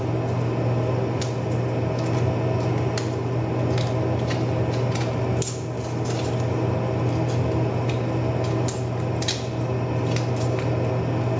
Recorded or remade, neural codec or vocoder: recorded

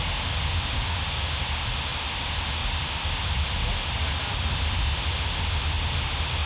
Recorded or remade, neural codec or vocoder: recorded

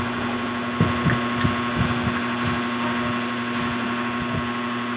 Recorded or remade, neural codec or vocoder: recorded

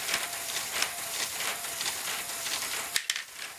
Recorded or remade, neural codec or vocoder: recorded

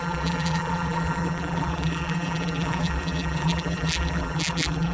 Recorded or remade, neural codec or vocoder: remade, vocoder, BigVGAN v2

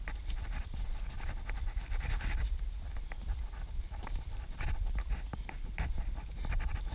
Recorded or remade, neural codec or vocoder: remade, vocoder, BigVGAN v2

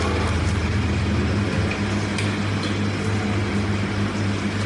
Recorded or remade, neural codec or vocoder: recorded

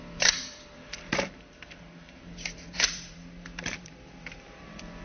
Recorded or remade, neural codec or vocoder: remade, vocoder, BigVGAN v2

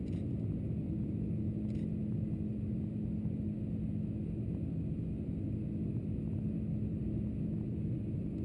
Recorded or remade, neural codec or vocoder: recorded